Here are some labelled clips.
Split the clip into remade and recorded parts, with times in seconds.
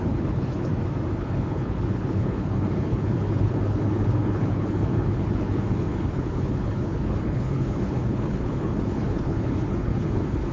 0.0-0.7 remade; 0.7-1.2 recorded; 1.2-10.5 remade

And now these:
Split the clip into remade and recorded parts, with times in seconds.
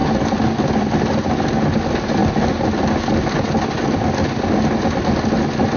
0.0-5.8 recorded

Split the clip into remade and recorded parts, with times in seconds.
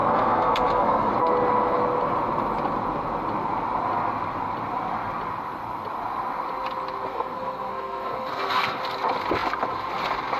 0.0-1.1 remade; 1.1-7.1 recorded; 7.1-8.8 remade; 8.8-10.4 recorded